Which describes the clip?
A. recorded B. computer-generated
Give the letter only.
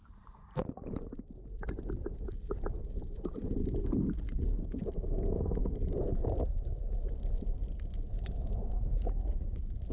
A